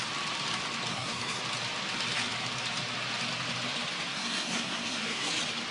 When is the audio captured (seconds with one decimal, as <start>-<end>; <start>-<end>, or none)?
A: 0.0-0.9; 1.4-4.1; 5.3-5.7